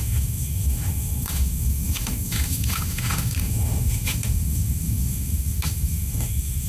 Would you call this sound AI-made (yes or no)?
yes